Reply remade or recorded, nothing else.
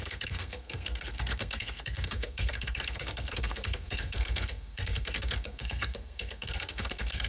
remade